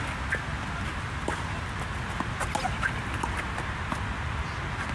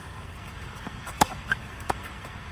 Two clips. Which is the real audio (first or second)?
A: first